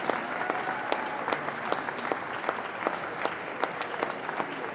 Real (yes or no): yes